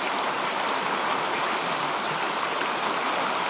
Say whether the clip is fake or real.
real